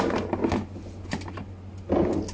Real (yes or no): yes